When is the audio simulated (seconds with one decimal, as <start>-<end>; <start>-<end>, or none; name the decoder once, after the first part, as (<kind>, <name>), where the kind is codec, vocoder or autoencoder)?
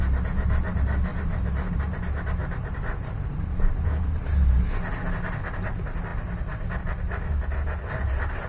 1.1-1.8 (vocoder, BigVGAN v2); 2.4-4.3